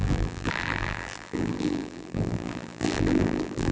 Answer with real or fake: fake